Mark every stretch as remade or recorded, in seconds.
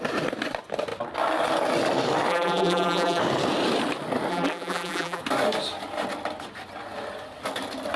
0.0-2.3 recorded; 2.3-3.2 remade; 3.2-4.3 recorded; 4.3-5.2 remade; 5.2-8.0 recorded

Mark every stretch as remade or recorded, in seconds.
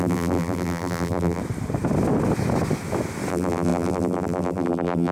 0.0-1.4 remade; 1.4-3.3 recorded; 3.3-5.1 remade